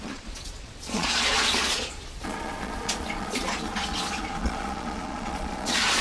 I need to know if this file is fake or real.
fake